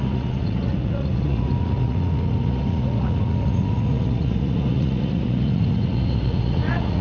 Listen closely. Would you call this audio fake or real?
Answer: fake